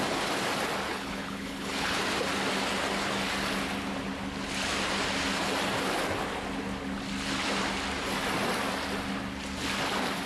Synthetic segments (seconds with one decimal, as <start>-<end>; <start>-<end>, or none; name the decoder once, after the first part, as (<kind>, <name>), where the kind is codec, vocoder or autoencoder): 0.9-2.0 (codec, HILCodec)